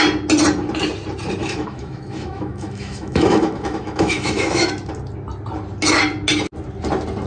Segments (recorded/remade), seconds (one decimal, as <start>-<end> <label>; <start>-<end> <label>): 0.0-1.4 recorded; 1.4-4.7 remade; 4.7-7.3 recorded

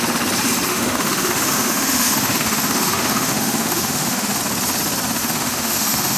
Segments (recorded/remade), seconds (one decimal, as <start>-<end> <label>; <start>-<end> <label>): 0.0-0.7 recorded; 0.7-4.4 remade; 4.4-5.2 recorded; 5.2-6.2 remade

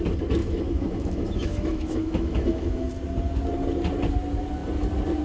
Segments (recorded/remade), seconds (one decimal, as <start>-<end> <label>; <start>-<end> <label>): 0.0-0.4 recorded; 0.4-2.9 remade; 2.9-5.2 recorded